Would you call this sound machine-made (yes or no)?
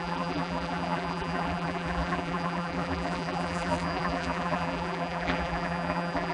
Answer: yes